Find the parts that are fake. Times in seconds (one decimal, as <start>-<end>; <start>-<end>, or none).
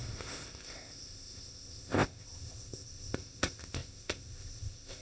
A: 0.0-5.0